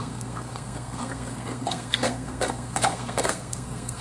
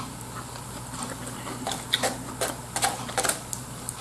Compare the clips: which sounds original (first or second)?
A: second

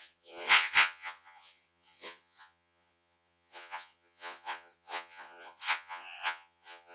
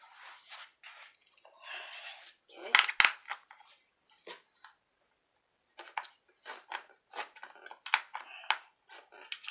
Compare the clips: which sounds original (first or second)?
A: second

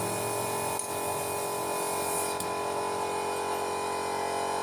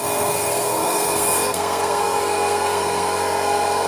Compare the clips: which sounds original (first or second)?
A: first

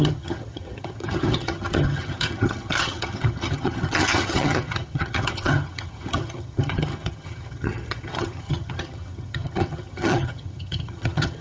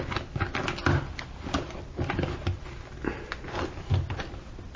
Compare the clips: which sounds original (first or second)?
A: second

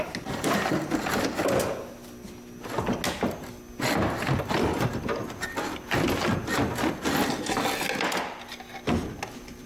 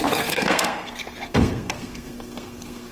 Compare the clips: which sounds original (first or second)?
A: first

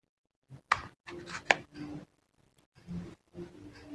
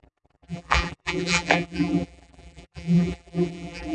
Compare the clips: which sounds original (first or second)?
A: first